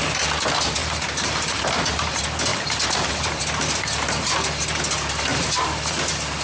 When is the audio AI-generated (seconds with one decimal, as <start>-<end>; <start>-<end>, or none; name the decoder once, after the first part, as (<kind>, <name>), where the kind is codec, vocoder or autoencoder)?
0.8-1.6 (vocoder, BigVGAN v2); 2.5-3.4; 5.3-5.9